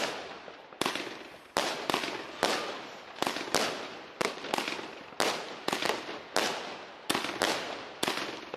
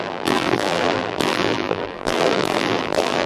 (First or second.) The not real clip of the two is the second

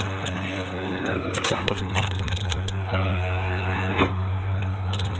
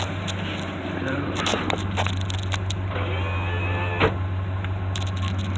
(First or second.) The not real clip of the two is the first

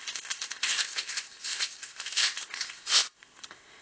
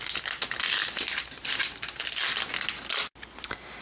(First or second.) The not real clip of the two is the first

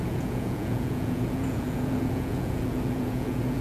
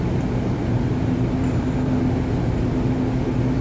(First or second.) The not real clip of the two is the first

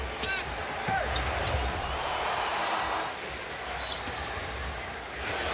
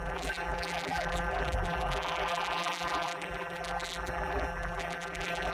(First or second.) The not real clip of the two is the second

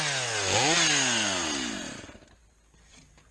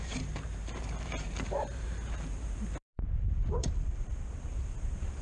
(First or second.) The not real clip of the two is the second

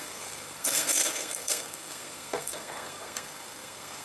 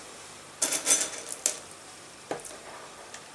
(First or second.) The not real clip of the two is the first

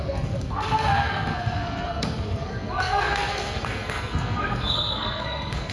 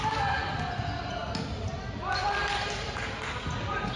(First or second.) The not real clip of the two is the first